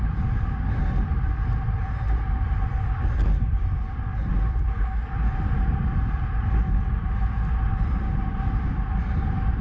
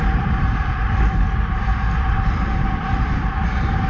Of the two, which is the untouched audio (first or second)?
first